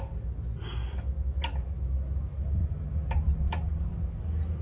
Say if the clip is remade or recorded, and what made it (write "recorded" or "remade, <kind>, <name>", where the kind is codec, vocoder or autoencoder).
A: recorded